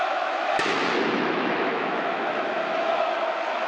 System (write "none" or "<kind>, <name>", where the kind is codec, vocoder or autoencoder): autoencoder, DAC-VAE